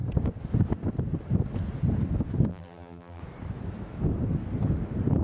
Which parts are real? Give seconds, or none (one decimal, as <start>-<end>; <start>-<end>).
0.0-2.5; 3.2-5.2